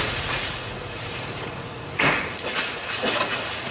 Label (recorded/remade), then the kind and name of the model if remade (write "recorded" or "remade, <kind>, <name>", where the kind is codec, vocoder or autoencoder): remade, vocoder, Vocos